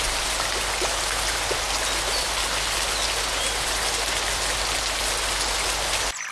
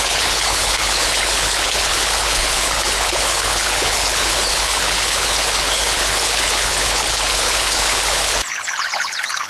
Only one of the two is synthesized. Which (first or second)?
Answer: second